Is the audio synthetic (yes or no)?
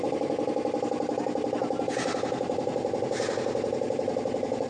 no